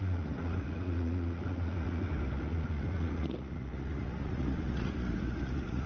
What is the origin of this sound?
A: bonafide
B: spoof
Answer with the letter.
B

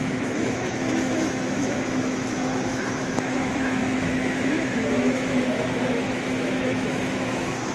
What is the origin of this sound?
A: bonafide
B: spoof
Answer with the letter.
B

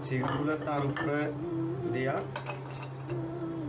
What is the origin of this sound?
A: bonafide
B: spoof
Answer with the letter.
A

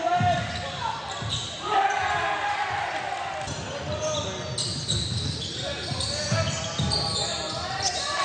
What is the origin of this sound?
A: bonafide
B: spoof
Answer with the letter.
A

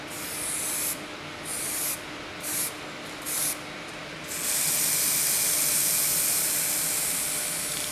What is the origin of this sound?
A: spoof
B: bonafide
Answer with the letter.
B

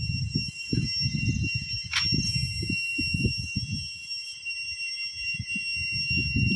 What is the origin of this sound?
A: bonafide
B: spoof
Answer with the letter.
A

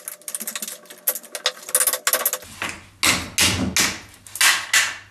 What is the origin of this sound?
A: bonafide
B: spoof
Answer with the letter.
A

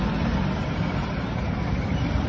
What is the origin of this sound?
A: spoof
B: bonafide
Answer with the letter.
B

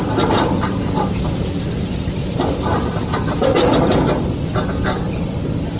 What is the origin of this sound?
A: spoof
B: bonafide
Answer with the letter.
B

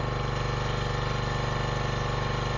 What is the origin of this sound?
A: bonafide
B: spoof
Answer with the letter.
A